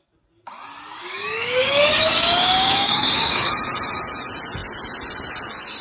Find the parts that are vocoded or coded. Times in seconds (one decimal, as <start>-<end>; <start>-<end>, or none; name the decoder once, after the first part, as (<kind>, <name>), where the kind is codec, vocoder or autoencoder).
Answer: 1.0-3.5 (codec, DAC)

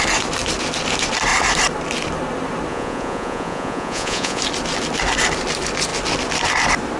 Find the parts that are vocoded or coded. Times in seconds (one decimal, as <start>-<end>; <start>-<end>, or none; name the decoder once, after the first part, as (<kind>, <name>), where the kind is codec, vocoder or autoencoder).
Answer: 2.7-4.4 (vocoder, Vocos)

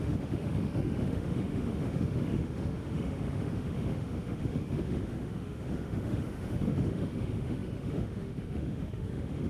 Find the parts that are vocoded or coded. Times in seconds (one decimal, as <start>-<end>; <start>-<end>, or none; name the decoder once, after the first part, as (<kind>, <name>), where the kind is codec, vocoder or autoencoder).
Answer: 0.0-9.5 (autoencoder, DAC-VAE)

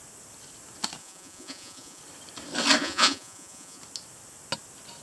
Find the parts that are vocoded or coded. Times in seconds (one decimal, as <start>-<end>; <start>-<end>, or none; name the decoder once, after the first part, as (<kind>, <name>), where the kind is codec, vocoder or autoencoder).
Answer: 1.0-2.0 (vocoder, Vocos); 2.8-3.8

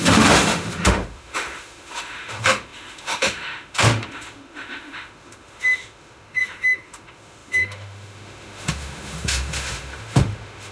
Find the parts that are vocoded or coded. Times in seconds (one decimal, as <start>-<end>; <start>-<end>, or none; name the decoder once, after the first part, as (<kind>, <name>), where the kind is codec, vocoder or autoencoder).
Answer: 0.0-10.7 (autoencoder, DAC-VAE)

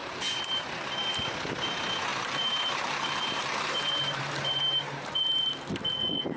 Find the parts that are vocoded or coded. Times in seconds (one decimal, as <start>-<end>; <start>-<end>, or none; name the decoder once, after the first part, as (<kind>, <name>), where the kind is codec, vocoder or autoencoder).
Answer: 0.0-0.9 (vocoder, BigVGAN v2); 2.1-5.7

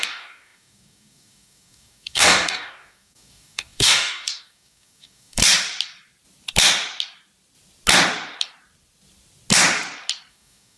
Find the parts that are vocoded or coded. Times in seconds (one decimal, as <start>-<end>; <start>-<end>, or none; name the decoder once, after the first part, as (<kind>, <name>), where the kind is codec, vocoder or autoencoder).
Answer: 0.0-5.4 (codec, DAC); 10.3-10.8

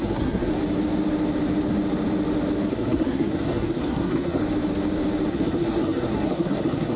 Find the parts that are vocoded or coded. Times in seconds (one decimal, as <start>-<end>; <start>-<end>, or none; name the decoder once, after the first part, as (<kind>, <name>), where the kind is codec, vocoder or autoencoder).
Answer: 0.0-0.5 (codec, SNAC); 2.7-4.4; 5.3-7.0